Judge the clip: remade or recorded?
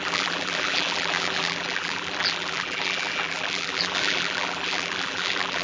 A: remade